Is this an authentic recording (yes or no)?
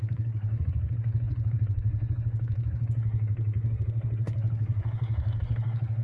no